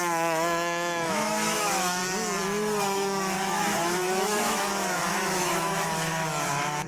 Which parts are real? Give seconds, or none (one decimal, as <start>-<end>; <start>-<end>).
2.0-2.8